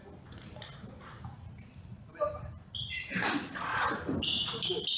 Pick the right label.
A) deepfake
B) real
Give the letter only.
B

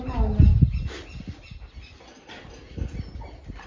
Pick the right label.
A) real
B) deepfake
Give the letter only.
A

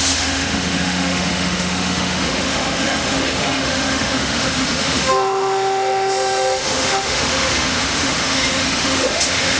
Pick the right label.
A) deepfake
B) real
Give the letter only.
A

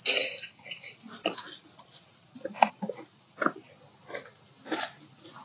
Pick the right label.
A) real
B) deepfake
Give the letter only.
A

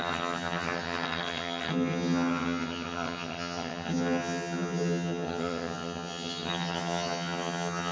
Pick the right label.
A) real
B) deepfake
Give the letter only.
B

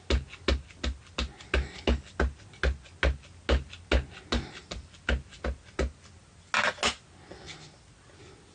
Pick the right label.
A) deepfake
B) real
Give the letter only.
B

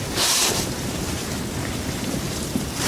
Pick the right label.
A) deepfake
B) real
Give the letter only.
A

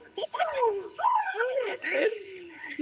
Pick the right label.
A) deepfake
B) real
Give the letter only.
A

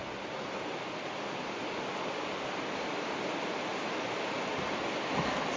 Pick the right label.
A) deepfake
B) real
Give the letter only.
B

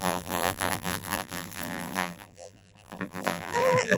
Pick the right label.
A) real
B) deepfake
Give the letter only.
B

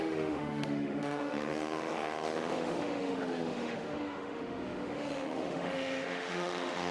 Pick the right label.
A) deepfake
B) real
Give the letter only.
A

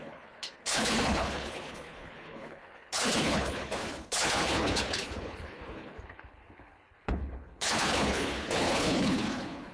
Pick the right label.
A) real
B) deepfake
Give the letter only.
B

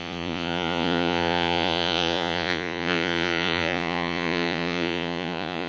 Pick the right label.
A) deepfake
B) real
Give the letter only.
A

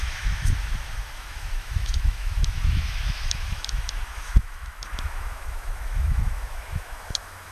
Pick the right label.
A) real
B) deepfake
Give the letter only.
B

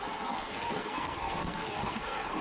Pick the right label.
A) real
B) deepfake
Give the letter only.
B